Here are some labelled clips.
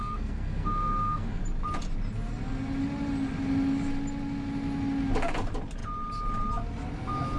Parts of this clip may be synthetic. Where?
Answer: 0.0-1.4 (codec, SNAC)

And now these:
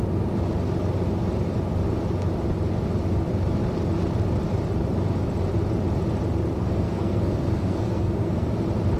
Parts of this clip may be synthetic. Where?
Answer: 6.6-8.5 (codec, SNAC)

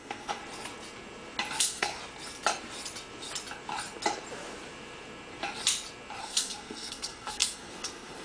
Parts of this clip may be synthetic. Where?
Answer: 0.0-0.4 (codec, SNAC); 1.6-2.0; 6.2-8.2

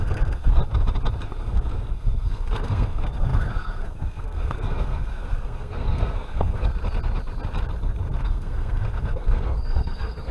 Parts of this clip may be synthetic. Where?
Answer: 0.0-0.6 (codec, SNAC); 1.4-6.7; 8.2-10.3

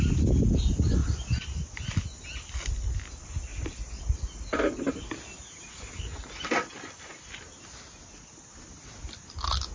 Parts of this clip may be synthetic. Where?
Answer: none

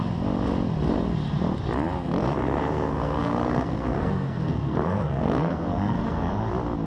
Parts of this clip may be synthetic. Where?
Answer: 2.2-6.3 (codec, SNAC)

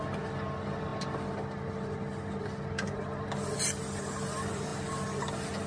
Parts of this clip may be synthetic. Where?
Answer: none